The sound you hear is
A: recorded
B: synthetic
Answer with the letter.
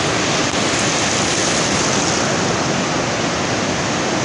A